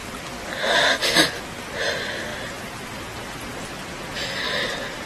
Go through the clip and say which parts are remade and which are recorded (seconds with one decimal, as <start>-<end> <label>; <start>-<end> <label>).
0.0-5.1 recorded